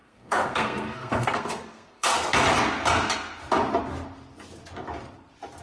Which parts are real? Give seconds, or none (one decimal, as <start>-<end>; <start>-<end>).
2.1-5.6